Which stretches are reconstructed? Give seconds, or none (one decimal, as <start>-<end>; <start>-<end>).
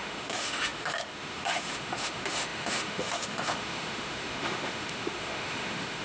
0.0-6.0